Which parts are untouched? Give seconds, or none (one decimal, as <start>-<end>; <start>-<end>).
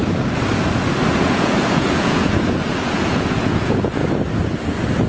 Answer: 0.0-1.2; 4.0-5.1